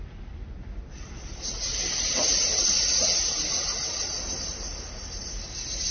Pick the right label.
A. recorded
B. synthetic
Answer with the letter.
A